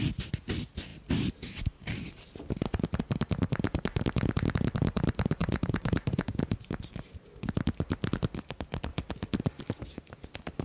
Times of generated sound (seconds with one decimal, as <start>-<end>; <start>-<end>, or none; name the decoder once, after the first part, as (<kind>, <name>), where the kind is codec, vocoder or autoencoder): 5.4-6.4 (vocoder, Vocos)